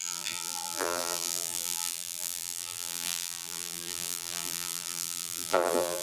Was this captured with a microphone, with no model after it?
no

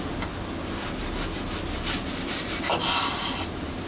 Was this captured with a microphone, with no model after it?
yes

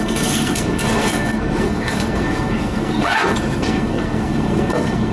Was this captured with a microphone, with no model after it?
no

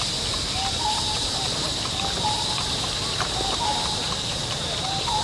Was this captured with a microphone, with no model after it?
no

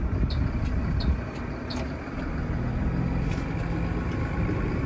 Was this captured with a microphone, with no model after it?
yes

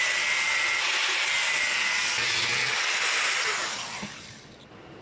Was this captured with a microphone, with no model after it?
yes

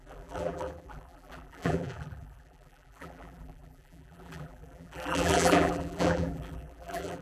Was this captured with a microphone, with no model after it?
no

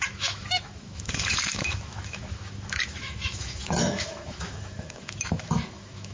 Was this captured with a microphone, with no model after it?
no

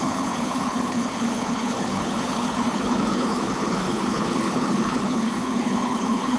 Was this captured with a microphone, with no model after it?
no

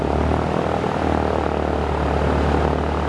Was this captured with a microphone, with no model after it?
yes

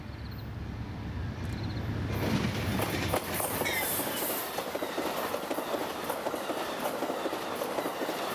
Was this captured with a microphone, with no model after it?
yes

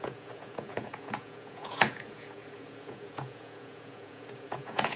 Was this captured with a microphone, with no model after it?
no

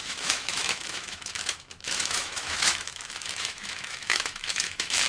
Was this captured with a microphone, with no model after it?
no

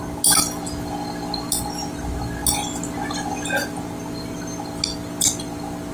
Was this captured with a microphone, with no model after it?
yes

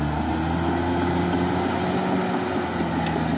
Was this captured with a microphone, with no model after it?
yes